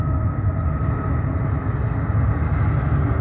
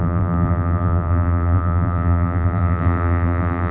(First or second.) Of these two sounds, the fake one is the second